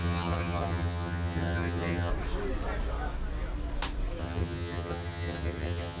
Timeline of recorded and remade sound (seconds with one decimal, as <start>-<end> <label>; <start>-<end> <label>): 0.0-2.1 remade; 2.1-4.2 recorded; 4.2-6.0 remade